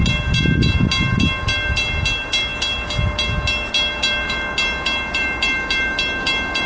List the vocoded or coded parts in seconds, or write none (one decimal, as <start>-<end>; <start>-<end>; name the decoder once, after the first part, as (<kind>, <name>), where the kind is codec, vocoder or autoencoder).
none